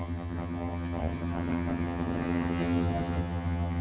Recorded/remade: remade